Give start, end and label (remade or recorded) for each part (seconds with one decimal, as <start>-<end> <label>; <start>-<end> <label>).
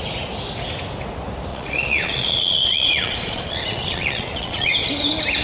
0.0-1.5 recorded; 1.5-4.7 remade; 4.7-5.4 recorded